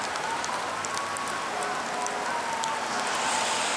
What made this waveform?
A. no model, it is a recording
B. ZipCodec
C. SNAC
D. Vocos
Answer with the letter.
A